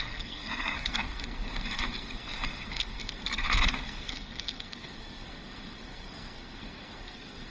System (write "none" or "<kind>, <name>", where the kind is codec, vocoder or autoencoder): codec, SNAC